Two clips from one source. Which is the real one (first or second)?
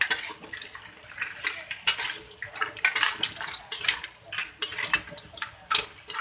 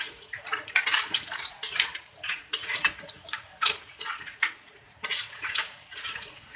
first